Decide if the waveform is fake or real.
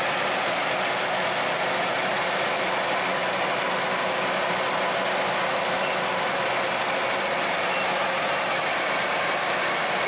real